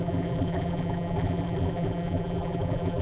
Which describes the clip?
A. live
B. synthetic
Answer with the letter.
B